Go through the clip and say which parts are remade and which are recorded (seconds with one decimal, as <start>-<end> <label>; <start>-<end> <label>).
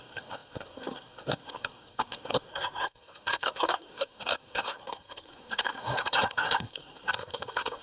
0.0-7.8 remade